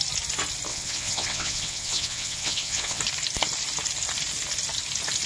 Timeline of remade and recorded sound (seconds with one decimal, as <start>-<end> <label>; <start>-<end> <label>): 0.0-0.7 recorded; 0.7-3.0 remade; 3.0-5.3 recorded